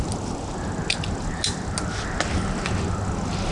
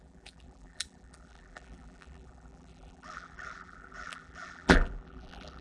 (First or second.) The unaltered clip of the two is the first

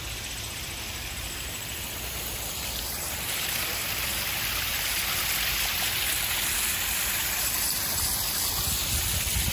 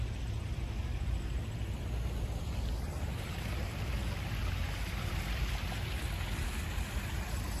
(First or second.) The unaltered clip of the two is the second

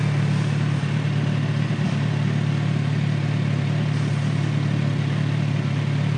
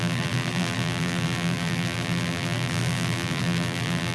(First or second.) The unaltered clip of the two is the first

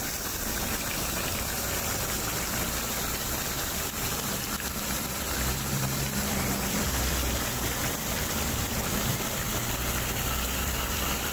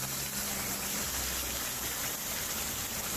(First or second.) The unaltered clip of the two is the second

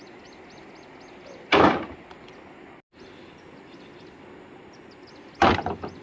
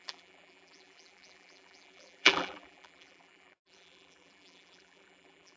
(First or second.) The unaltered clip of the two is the first